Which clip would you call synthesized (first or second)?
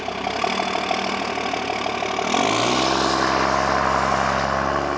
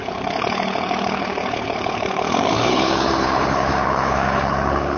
second